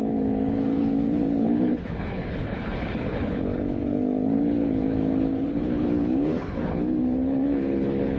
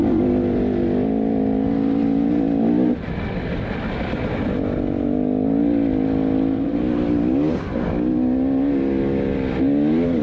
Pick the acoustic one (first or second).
second